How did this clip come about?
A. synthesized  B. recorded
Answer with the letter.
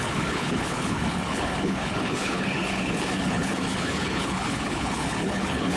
A